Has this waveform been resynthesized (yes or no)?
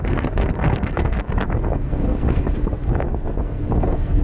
yes